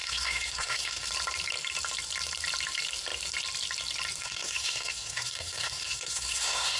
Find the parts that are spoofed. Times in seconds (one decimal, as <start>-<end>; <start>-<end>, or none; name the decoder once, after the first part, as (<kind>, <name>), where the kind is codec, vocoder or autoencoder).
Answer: 0.0-1.1 (codec, SNAC); 4.2-6.8